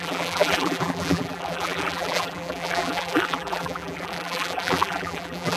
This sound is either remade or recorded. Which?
remade